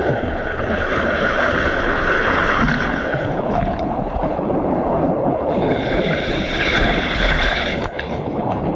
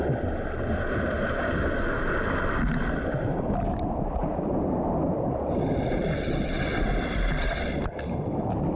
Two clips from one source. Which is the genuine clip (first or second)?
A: second